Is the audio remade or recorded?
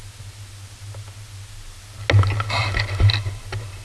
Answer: recorded